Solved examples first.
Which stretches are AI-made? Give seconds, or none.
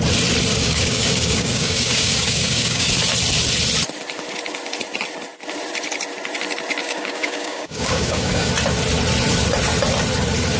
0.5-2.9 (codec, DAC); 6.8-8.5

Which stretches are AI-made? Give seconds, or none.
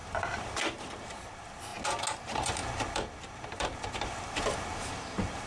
0.0-1.7 (vocoder, BigVGAN v2); 2.2-5.5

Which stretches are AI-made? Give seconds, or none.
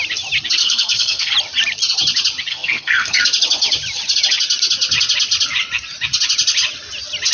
0.6-1.3 (codec, SNAC); 2.5-3.2